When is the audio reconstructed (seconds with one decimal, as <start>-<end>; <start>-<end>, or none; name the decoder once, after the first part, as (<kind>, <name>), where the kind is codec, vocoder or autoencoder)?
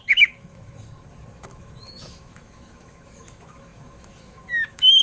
0.0-5.0 (autoencoder, DAC-VAE)